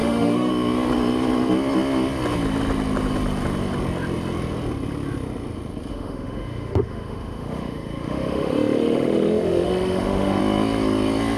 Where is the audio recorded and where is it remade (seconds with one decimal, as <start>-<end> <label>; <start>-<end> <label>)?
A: 0.0-0.5 remade; 0.5-5.9 recorded; 5.9-10.4 remade; 10.4-11.4 recorded